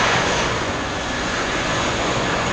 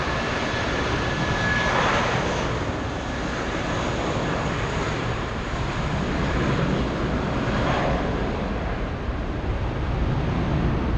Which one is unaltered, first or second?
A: second